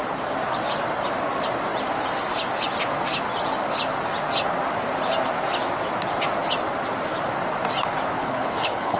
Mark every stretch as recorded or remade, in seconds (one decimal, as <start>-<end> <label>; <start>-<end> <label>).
0.0-8.2 recorded; 8.2-9.0 remade